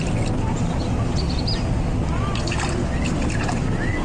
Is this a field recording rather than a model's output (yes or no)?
yes